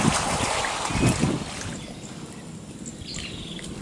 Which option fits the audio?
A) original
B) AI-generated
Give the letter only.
A